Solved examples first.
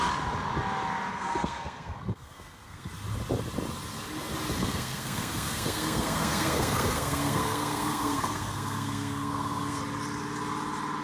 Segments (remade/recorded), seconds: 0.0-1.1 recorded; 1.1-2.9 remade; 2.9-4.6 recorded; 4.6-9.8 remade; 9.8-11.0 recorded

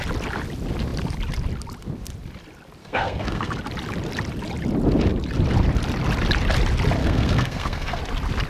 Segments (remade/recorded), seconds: 0.0-2.8 recorded; 2.8-3.5 remade; 3.5-7.0 recorded; 7.0-8.0 remade; 8.0-8.5 recorded